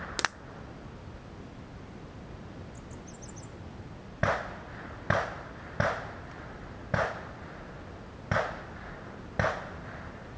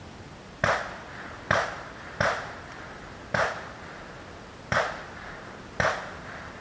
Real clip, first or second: first